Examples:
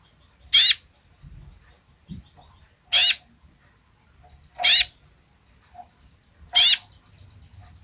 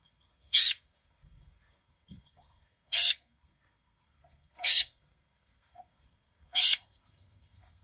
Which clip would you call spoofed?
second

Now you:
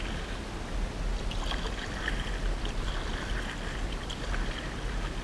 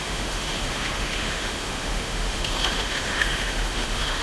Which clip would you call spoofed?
second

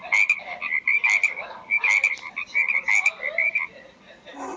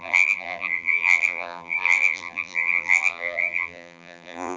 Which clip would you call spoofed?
second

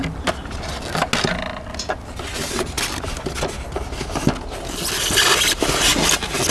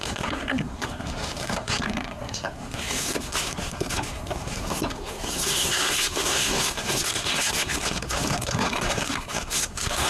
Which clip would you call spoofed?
second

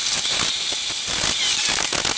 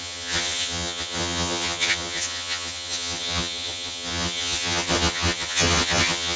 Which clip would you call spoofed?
second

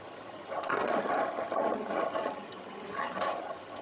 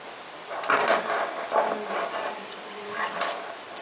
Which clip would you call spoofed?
first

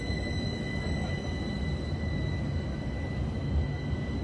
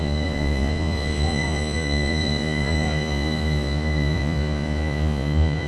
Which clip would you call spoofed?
second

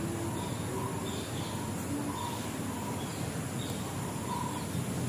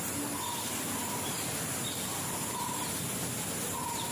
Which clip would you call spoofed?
second